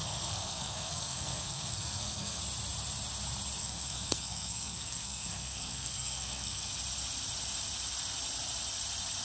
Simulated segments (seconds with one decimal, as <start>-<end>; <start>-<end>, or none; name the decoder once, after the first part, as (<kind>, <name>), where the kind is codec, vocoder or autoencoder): 0.0-2.4 (codec, SNAC); 3.6-6.7